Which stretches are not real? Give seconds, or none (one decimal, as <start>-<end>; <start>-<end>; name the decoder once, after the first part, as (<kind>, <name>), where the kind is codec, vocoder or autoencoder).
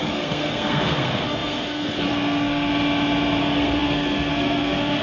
0.0-2.7 (codec, SNAC); 3.4-5.0